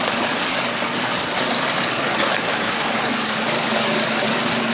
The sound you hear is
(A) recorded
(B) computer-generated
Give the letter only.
B